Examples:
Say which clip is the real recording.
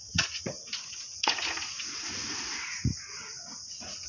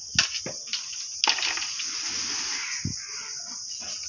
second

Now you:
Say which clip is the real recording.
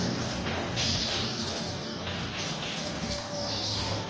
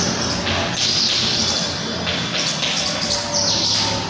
second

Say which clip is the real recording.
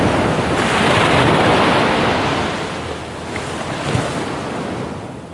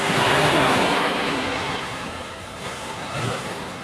first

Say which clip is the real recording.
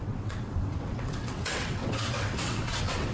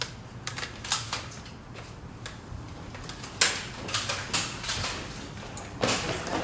second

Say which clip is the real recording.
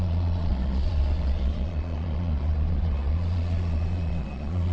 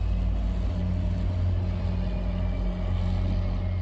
second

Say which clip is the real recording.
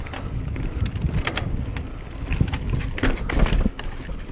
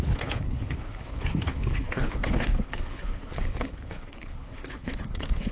first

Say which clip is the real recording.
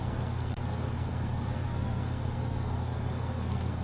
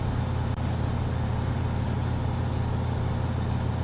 second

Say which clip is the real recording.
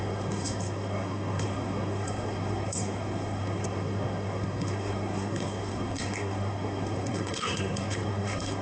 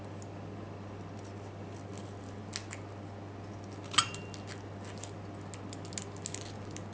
second